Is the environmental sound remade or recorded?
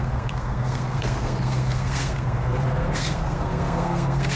remade